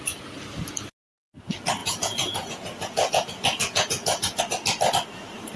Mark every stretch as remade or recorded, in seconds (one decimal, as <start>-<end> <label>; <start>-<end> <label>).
0.0-1.8 recorded; 1.8-4.4 remade; 4.4-5.6 recorded